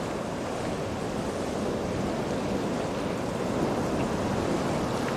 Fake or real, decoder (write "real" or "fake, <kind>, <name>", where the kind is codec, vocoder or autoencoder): real